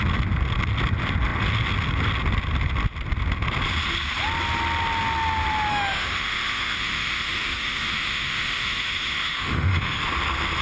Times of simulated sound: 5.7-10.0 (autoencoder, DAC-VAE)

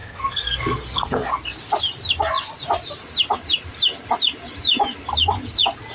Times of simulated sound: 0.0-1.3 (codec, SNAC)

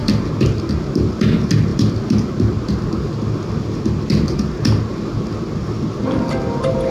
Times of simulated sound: none